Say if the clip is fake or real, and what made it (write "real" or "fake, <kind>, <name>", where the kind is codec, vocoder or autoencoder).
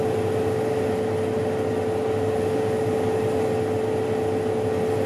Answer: real